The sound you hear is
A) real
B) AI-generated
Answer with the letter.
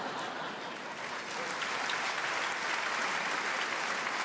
A